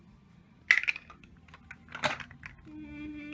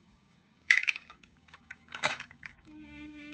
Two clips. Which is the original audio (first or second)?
first